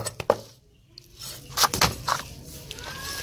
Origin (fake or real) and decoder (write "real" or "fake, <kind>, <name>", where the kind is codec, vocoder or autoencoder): fake, vocoder, BigVGAN v2